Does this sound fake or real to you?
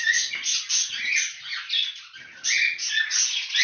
real